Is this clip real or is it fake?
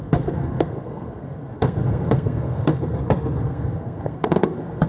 fake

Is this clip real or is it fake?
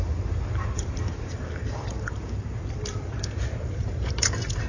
fake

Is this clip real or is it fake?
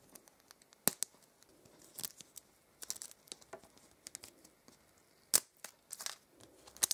real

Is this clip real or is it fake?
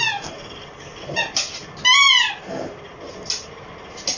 real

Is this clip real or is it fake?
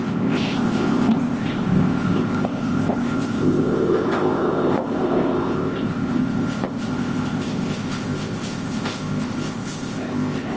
fake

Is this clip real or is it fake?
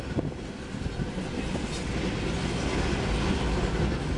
real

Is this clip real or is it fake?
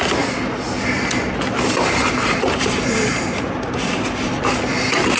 real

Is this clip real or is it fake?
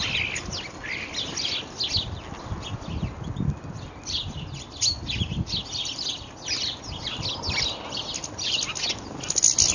real